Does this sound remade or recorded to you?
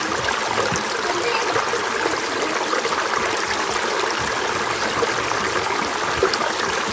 recorded